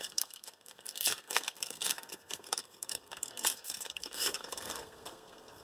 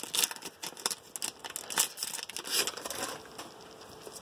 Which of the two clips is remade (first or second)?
first